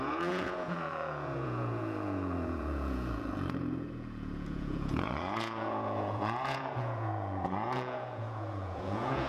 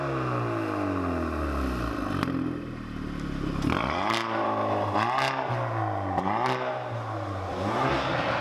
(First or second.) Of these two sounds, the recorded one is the second